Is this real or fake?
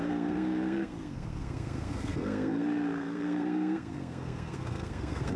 fake